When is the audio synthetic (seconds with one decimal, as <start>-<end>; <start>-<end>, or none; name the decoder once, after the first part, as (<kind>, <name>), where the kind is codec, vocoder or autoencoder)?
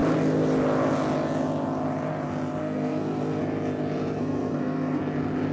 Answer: 2.6-3.4 (codec, SNAC); 4.2-5.0